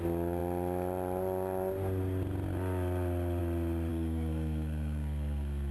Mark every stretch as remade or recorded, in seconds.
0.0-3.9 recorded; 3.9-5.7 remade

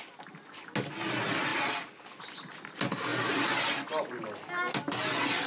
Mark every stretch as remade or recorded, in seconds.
0.0-1.5 recorded; 1.5-2.2 remade; 2.2-5.5 recorded

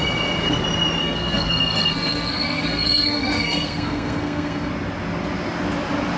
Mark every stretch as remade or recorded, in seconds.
0.0-1.0 recorded; 1.0-4.7 remade; 4.7-6.2 recorded

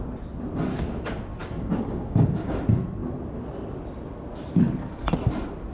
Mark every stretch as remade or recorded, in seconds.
0.0-1.4 recorded; 1.4-2.6 remade; 2.6-5.7 recorded